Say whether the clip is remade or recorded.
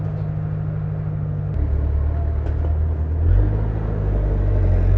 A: recorded